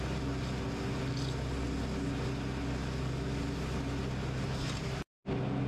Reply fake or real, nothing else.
real